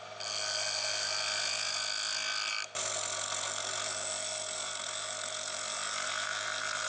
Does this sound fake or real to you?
real